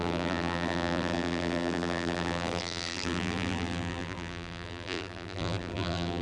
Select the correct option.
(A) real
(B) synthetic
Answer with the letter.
B